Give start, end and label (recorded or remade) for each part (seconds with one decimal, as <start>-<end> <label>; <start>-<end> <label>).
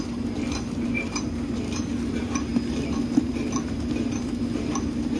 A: 0.0-5.2 recorded